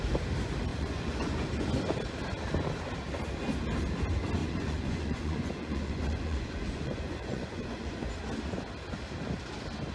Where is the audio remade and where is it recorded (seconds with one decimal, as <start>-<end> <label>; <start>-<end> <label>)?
0.0-0.7 recorded; 0.7-1.4 remade; 1.4-4.4 recorded; 4.4-8.1 remade; 8.1-9.9 recorded